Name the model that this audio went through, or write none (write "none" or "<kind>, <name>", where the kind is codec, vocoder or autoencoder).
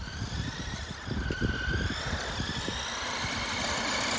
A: none